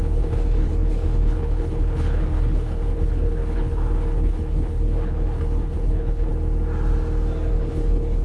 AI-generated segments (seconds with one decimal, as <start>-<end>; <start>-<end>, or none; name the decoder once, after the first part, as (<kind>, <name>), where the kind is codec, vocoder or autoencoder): 0.0-6.3 (codec, HILCodec); 7.5-8.2